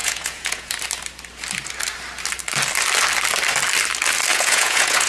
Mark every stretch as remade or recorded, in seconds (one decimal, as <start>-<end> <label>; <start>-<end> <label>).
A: 0.0-0.7 remade; 0.7-4.3 recorded; 4.3-5.1 remade